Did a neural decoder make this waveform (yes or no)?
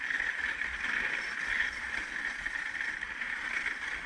yes